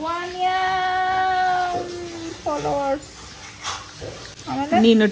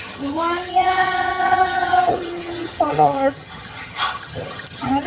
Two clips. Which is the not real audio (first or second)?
second